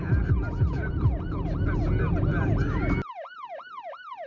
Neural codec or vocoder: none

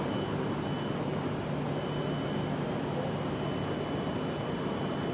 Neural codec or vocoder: none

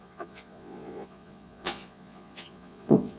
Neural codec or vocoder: vocoder, Vocos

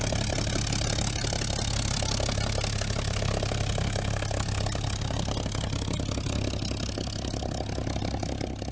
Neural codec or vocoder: none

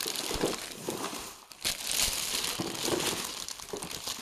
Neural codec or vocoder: none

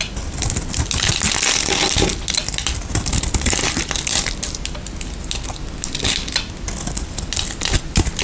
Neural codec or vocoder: none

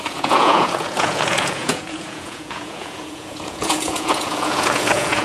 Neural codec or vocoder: vocoder, Vocos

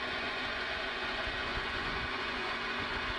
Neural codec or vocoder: vocoder, Vocos